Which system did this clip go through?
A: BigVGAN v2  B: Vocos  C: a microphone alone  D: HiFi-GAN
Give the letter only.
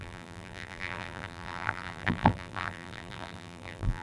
A